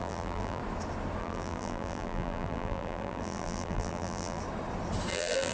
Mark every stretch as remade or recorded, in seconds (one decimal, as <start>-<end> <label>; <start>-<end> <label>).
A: 0.0-0.6 remade; 0.6-1.2 recorded; 1.2-4.4 remade; 4.4-5.1 recorded; 5.1-5.5 remade